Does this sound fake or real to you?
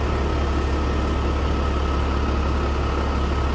real